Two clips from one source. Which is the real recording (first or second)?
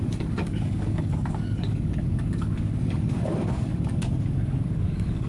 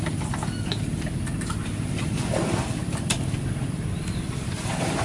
second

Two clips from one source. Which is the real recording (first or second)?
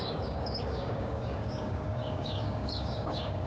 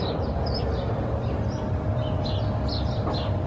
second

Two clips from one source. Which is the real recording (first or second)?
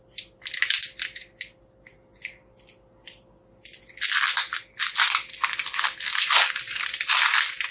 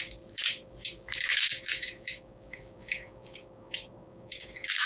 first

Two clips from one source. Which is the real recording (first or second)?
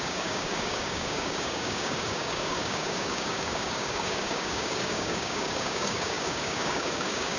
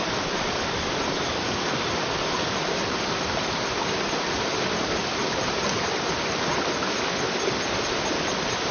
second